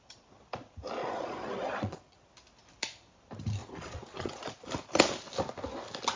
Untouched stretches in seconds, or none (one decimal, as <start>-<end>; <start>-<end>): 0.0-1.0; 2.3-3.6; 4.5-6.2